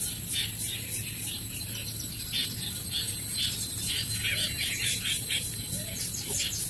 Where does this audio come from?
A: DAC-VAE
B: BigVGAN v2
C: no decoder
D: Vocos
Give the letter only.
C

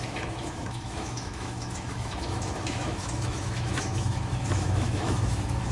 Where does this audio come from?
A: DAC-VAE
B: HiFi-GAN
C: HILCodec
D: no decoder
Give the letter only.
A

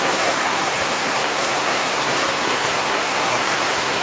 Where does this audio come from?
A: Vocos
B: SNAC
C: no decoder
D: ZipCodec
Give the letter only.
B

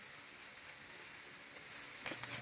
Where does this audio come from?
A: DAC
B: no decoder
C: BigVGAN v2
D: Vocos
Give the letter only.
B